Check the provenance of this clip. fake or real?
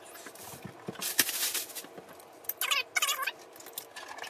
real